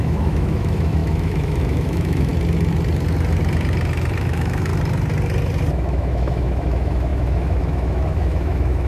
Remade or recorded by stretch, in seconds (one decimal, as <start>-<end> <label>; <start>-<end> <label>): 0.0-2.3 remade; 2.3-4.2 recorded; 4.2-4.7 remade; 4.7-5.7 recorded; 5.7-8.9 remade